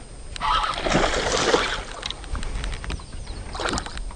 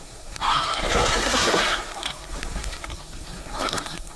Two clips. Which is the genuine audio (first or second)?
first